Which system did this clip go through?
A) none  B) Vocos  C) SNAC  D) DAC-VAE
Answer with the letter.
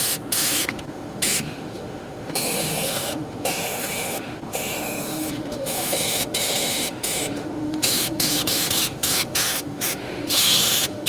D